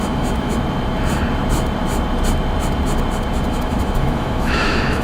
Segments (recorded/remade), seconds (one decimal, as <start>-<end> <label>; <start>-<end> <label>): 0.0-0.5 remade; 0.5-3.5 recorded; 3.5-5.0 remade